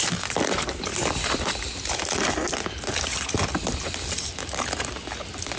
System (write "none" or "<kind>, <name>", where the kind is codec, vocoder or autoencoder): none